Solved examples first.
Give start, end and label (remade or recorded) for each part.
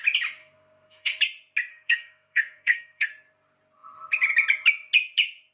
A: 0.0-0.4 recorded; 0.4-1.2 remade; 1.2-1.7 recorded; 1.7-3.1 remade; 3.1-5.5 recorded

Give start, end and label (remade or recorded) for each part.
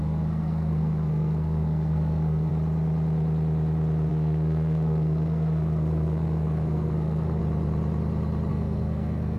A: 0.0-2.5 remade; 2.5-4.1 recorded; 4.1-7.4 remade; 7.4-8.5 recorded; 8.5-9.4 remade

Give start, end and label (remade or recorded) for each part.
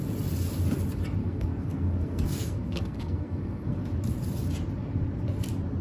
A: 0.0-1.2 recorded; 1.2-3.8 remade; 3.8-5.8 recorded